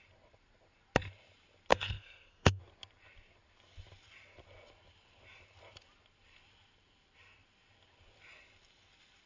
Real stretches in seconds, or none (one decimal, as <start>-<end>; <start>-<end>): 0.0-1.7; 2.6-9.3